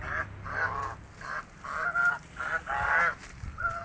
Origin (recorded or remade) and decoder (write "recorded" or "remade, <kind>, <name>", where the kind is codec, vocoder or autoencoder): recorded